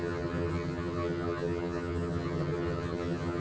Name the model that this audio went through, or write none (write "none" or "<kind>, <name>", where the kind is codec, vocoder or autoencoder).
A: vocoder, HiFi-GAN